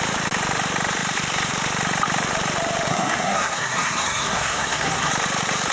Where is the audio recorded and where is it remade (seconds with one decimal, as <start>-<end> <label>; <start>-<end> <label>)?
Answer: 0.0-2.9 recorded; 2.9-5.1 remade; 5.1-5.7 recorded